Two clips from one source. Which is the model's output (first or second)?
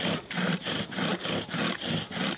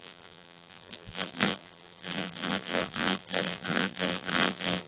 second